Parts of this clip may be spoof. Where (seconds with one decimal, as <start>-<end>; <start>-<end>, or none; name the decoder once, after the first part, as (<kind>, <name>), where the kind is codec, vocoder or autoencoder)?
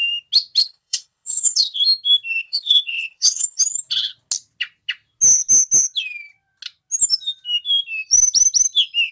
0.6-1.8 (codec, HILCodec); 2.4-3.6